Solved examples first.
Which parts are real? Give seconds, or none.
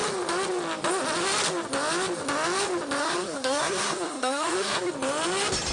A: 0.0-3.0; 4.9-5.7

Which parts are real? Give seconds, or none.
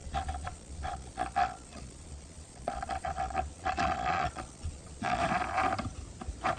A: 5.2-6.6